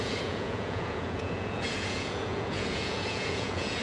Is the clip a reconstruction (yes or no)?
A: yes